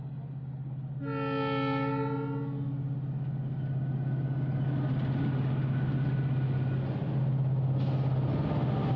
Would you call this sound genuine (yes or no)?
yes